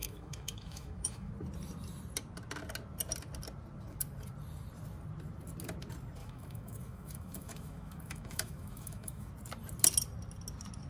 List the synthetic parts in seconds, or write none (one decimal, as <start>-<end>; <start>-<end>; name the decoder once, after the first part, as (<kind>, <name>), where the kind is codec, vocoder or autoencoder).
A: 0.0-1.3 (autoencoder, DAC-VAE); 6.2-9.3